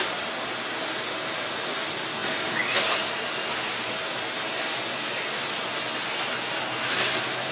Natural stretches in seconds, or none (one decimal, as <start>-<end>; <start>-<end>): 0.0-7.5